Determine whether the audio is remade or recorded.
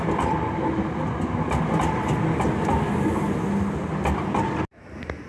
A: recorded